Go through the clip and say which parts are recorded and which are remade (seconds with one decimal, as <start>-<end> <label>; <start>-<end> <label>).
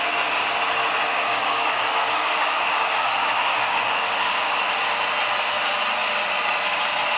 0.0-1.1 recorded; 1.1-4.6 remade; 4.6-7.2 recorded